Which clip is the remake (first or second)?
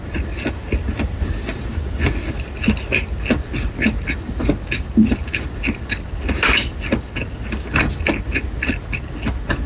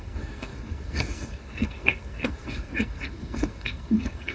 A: second